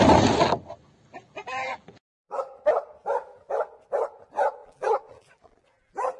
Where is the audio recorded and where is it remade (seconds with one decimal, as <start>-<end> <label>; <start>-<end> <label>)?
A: 0.0-1.4 recorded; 1.4-2.4 remade; 2.4-4.6 recorded; 4.6-6.2 remade